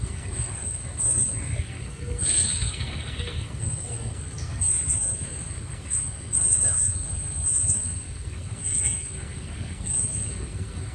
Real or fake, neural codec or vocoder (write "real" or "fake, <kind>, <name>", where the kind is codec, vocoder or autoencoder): fake, codec, SNAC